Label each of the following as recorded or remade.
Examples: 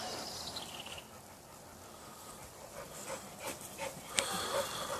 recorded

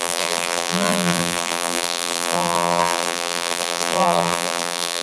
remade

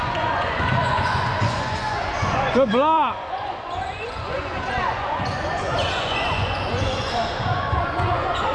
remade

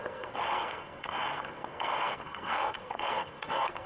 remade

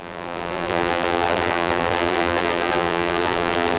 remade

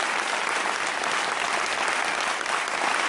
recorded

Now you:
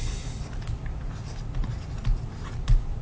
recorded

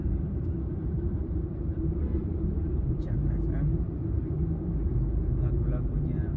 remade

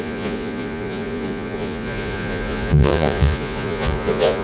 remade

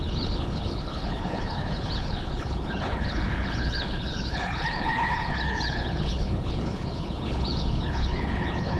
remade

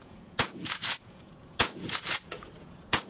remade